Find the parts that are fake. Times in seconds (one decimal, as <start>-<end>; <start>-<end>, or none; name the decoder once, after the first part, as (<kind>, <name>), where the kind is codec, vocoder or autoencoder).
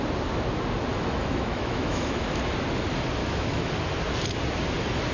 0.9-2.4 (autoencoder, DAC-VAE); 3.2-3.7